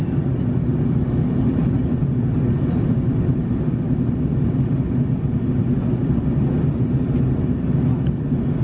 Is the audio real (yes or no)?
yes